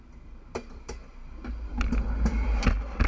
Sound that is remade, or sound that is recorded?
recorded